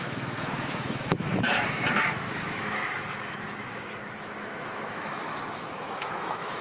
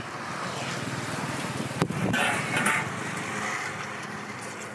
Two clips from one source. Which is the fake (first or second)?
first